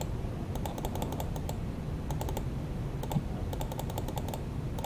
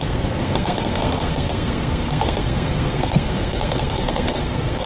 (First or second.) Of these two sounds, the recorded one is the first